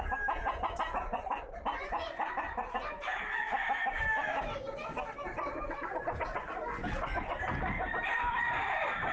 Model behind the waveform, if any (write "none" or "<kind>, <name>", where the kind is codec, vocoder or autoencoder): none